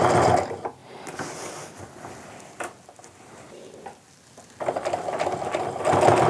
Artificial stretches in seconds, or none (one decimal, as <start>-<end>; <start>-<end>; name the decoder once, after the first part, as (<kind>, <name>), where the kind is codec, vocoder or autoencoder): none